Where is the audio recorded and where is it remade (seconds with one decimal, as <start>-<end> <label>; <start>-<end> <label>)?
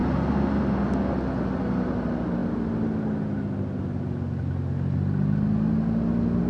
0.0-6.5 recorded